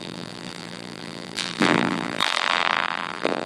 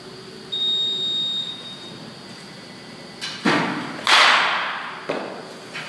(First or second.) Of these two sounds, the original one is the second